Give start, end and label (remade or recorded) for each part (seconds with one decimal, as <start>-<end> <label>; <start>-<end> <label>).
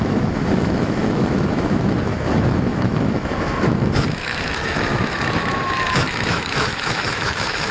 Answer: 0.0-7.7 remade